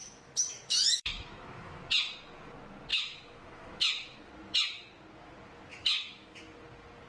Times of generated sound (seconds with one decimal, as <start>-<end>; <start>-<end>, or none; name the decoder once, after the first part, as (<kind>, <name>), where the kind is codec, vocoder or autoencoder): 0.0-1.8 (autoencoder, DAC-VAE); 2.9-4.3; 5.7-6.4